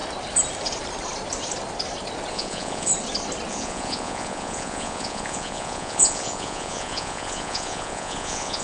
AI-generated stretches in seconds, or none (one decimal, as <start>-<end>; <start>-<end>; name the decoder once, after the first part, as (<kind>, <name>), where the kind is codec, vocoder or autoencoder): 2.3-2.9 (vocoder, Vocos); 3.5-8.6